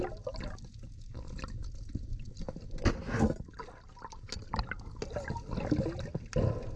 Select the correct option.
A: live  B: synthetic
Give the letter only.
A